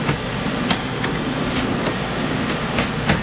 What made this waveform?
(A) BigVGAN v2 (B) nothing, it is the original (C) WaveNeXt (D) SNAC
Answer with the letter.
B